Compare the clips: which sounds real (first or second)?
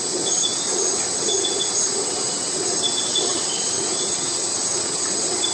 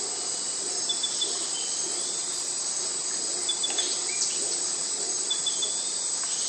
second